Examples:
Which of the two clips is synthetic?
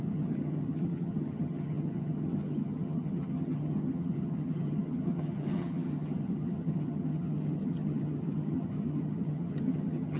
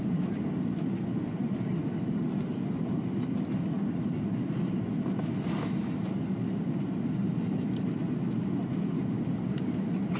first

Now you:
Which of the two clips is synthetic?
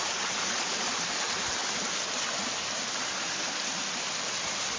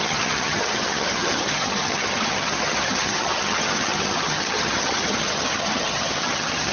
second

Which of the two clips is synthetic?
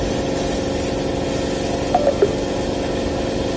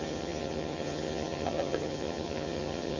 second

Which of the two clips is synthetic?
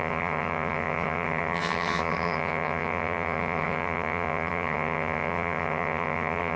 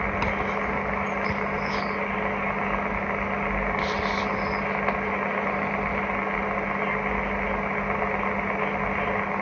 first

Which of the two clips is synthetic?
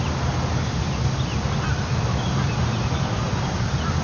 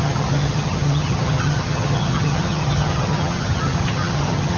second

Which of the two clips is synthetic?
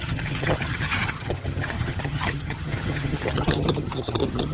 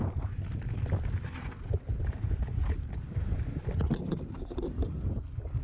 first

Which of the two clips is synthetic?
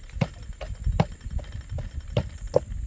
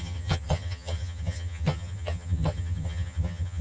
second